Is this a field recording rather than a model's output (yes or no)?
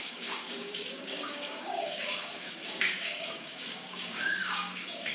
no